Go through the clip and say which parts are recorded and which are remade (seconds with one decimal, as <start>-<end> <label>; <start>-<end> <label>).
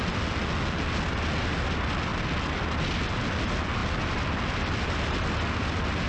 0.0-6.1 recorded